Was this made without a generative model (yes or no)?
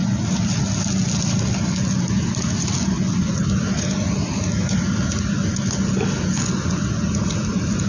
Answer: yes